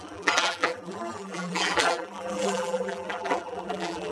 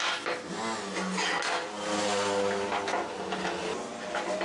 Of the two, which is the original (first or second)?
second